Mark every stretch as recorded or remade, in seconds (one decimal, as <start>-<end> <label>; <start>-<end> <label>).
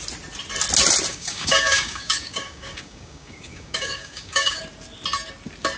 0.0-1.1 recorded; 1.1-4.6 remade; 4.6-5.8 recorded